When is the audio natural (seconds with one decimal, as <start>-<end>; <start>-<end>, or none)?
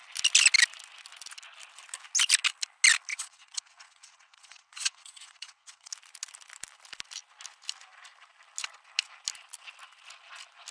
0.0-3.1; 5.9-10.7